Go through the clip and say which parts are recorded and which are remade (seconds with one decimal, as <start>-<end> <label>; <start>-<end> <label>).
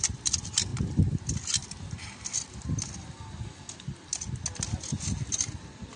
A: 0.0-6.0 recorded